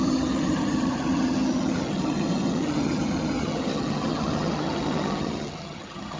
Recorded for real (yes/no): no